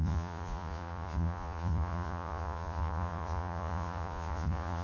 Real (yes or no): no